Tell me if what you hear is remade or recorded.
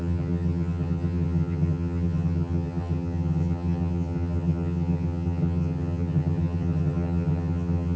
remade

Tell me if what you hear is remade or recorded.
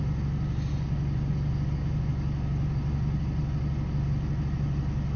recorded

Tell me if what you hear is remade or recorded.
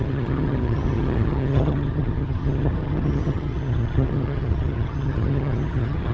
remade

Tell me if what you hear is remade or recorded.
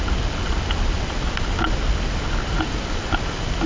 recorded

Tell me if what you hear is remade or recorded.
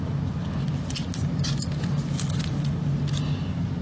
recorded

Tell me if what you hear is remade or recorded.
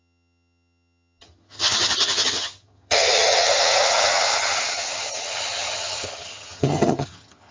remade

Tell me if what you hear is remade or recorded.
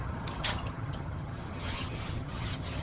remade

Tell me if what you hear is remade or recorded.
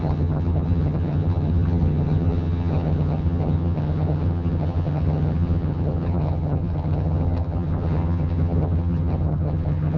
remade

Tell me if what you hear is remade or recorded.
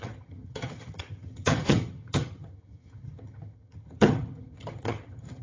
remade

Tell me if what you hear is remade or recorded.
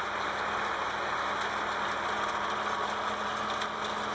recorded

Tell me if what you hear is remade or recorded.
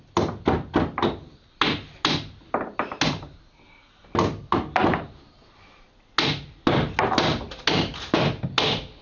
recorded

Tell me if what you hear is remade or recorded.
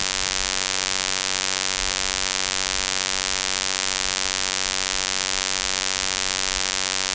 recorded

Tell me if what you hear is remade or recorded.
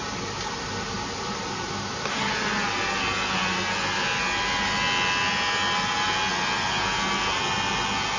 recorded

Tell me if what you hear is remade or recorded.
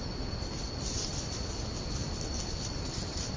recorded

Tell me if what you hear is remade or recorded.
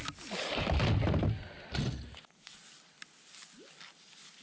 recorded